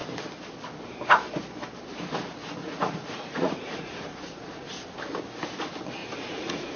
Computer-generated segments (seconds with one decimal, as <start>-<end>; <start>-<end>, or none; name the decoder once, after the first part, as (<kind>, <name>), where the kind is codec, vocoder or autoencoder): 2.6-4.7 (vocoder, Vocos); 6.0-6.8